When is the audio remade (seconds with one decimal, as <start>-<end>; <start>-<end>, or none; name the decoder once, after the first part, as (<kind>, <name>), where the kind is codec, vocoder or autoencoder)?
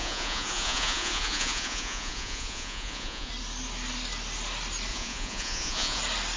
0.0-3.3 (vocoder, Vocos); 4.9-6.0